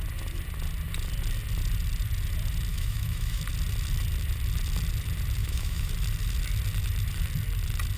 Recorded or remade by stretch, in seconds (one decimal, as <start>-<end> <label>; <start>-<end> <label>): 0.0-2.7 recorded; 2.7-3.4 remade; 3.4-5.4 recorded; 5.4-5.9 remade; 5.9-8.0 recorded